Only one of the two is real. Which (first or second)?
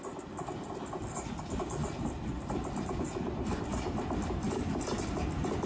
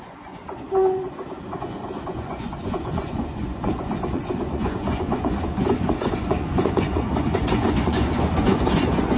first